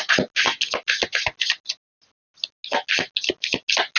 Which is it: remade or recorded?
recorded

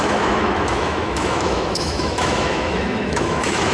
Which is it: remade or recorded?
remade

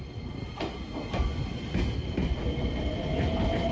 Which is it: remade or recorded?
recorded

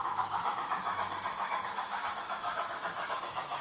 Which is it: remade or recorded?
remade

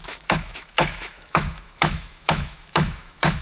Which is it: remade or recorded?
remade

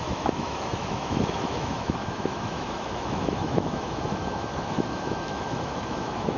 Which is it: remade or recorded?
remade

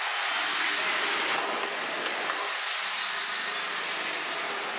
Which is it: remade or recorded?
recorded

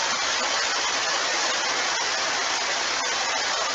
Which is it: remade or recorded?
recorded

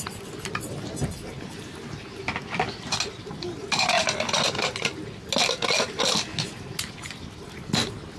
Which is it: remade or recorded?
recorded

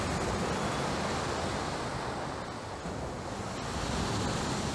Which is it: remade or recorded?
recorded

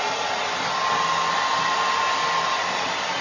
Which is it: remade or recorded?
recorded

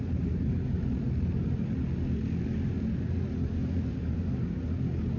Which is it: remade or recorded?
recorded